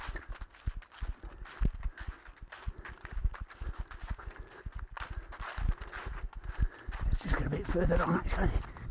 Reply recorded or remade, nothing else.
recorded